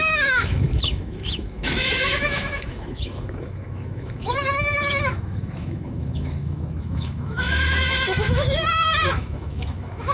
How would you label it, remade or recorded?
remade